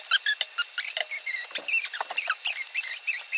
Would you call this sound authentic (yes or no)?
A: yes